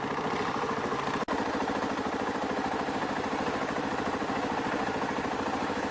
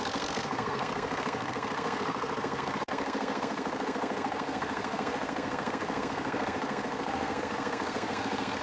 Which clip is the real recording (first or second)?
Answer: first